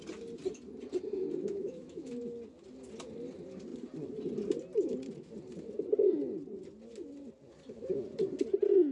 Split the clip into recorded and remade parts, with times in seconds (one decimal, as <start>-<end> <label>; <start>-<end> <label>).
0.0-1.4 recorded; 1.4-2.1 remade; 2.1-8.9 recorded